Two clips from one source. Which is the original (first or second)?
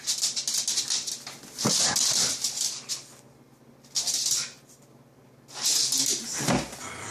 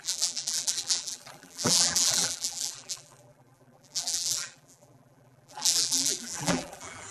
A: first